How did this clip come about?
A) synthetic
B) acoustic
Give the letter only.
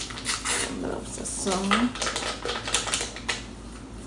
B